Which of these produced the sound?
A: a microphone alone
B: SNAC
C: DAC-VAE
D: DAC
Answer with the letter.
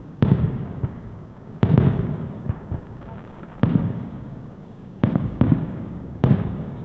D